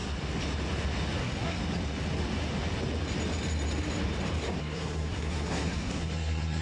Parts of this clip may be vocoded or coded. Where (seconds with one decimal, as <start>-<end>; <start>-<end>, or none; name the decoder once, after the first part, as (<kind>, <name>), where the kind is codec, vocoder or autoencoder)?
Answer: 1.2-1.6 (codec, SNAC); 4.6-6.6